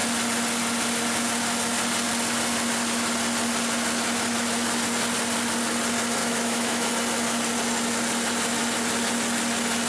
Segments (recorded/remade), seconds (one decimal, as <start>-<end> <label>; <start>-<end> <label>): 0.0-6.2 recorded; 6.2-6.9 remade; 6.9-9.9 recorded